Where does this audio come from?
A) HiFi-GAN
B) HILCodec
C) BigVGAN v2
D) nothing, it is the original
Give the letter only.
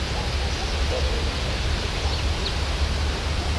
D